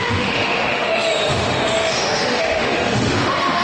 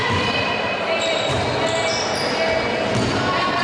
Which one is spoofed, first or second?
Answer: first